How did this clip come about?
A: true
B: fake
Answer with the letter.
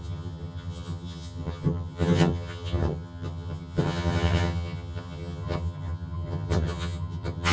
B